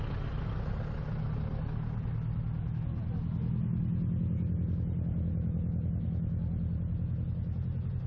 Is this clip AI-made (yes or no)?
no